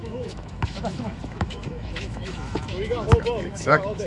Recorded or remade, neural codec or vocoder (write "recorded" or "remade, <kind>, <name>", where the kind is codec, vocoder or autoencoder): remade, autoencoder, DAC-VAE